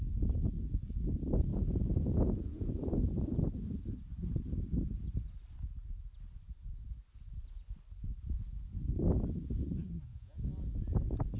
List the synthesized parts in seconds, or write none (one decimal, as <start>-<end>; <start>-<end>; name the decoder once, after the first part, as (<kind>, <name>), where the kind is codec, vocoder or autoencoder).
1.5-2.7 (vocoder, Vocos); 10.1-11.0